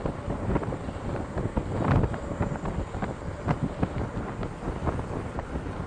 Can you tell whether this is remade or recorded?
recorded